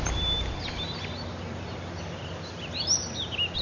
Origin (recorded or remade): recorded